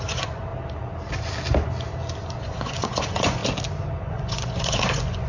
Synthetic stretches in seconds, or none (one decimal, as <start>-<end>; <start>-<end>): 0.0-0.5; 2.4-3.4; 4.0-5.3